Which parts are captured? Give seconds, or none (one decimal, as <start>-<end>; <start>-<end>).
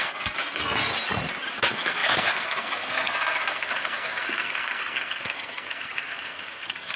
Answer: 0.9-1.5